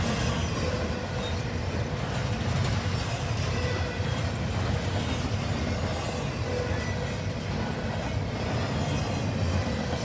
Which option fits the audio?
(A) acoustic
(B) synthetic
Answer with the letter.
A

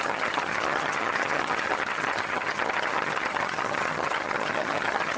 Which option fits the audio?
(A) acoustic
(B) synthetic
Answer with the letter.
B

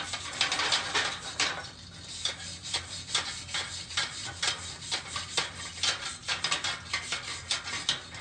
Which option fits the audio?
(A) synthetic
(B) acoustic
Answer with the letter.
B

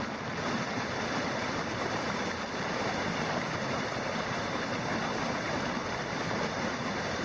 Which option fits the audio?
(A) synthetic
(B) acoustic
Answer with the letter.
A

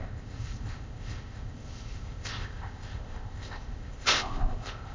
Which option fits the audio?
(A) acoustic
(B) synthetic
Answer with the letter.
B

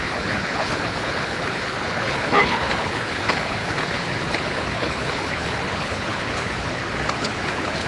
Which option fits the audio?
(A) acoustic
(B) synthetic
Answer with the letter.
B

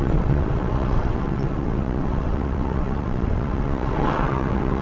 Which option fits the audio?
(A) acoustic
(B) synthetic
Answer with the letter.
B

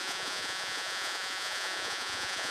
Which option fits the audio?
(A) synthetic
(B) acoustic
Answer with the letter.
A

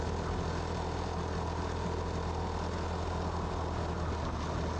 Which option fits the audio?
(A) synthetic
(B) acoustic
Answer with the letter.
B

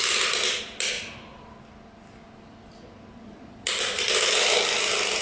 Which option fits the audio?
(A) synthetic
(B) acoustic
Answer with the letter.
B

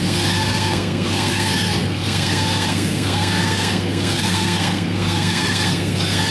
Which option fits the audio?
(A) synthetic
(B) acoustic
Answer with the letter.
A